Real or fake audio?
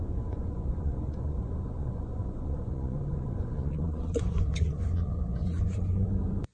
fake